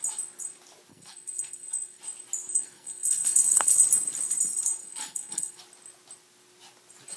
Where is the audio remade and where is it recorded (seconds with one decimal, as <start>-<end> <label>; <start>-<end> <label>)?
0.0-0.9 recorded; 0.9-2.0 remade; 2.0-2.5 recorded; 2.5-3.7 remade; 3.7-4.8 recorded; 4.8-5.6 remade; 5.6-7.2 recorded